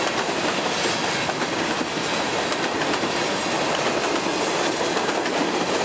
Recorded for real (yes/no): yes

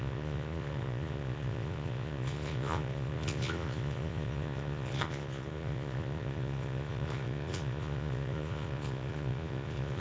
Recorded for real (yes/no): no